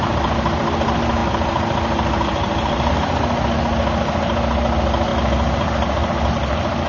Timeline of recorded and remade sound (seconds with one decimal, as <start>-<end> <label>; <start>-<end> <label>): 0.0-6.9 recorded